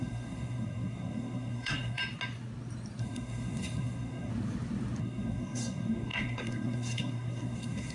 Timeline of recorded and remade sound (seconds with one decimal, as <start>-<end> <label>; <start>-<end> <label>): 0.0-2.0 remade; 2.0-3.0 recorded; 3.0-4.3 remade; 4.3-5.0 recorded; 5.0-7.9 remade